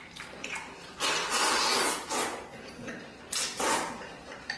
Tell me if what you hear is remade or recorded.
recorded